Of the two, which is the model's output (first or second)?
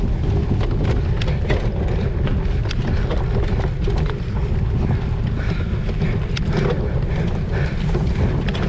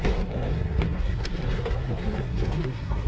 second